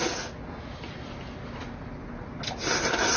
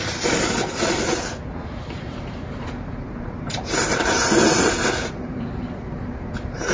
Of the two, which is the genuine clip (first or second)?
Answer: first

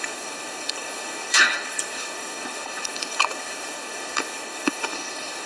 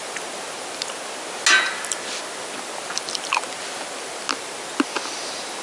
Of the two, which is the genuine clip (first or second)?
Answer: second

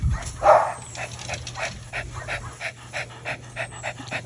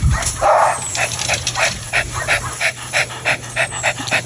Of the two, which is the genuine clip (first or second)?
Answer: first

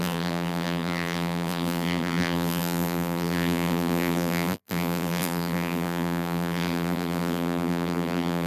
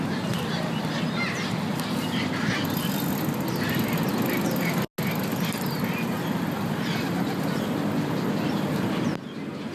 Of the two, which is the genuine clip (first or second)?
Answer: second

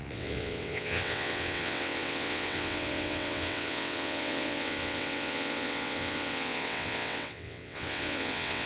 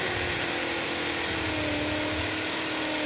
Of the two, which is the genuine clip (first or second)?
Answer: second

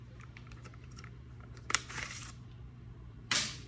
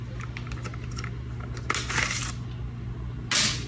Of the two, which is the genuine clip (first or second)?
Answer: second